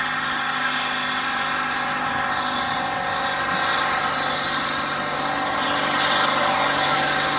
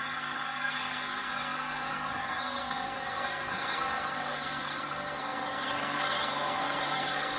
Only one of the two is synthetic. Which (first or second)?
second